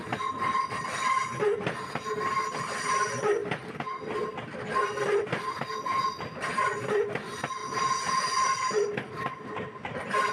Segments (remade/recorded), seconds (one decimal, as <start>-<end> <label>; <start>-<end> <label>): 0.0-10.3 recorded